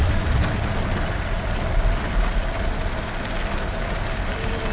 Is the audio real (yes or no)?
yes